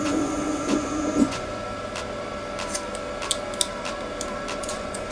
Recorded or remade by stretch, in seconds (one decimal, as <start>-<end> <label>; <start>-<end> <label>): 0.0-1.5 remade; 1.5-4.6 recorded; 4.6-5.1 remade